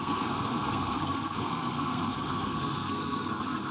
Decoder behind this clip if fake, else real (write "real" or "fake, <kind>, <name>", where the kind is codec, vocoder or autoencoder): fake, codec, SNAC